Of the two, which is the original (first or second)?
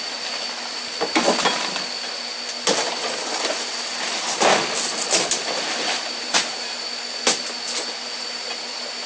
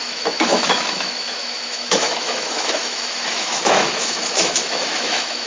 first